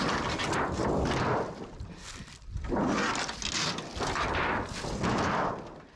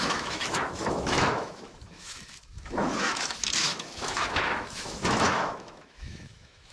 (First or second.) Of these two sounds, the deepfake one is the second